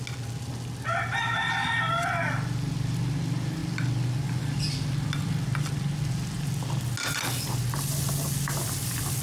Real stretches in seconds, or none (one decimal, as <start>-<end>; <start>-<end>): 0.0-9.2